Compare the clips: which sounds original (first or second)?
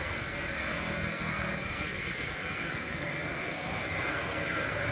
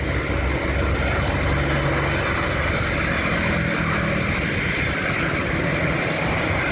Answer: second